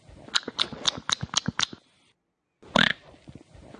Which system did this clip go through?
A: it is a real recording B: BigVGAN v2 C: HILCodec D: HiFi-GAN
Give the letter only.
A